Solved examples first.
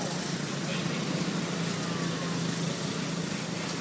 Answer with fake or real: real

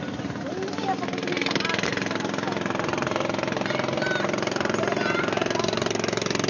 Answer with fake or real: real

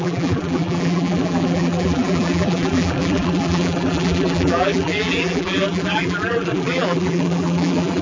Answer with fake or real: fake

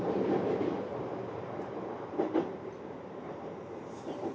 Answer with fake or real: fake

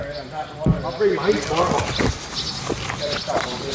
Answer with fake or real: real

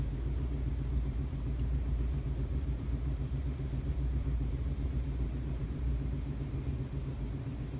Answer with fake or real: fake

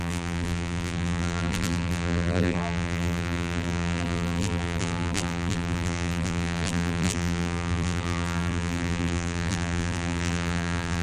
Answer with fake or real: fake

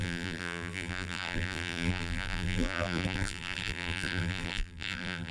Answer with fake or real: fake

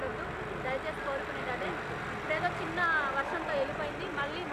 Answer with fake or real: real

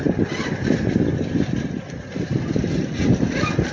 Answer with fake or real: real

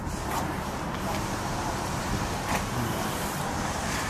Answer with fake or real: fake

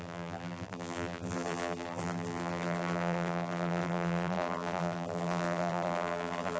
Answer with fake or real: fake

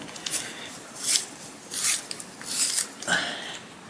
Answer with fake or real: real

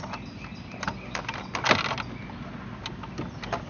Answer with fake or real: real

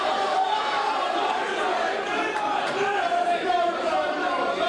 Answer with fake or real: fake